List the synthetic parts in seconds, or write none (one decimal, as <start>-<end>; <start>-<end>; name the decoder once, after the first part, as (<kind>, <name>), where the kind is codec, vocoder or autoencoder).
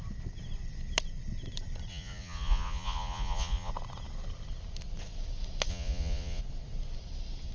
1.9-3.7 (vocoder, Vocos); 5.7-6.4